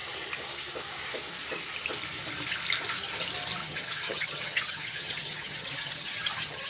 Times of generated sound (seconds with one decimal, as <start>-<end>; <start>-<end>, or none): 3.6-6.7